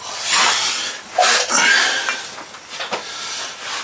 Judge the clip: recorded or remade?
recorded